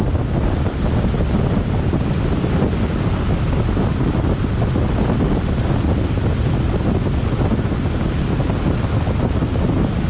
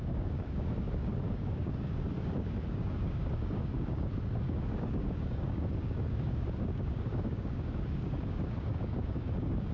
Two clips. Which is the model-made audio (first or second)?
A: second